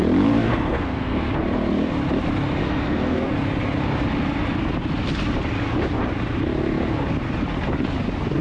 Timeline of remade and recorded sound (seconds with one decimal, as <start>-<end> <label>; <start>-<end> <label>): 0.0-0.5 recorded; 0.5-1.3 remade; 1.3-2.6 recorded; 2.6-3.3 remade; 3.3-8.4 recorded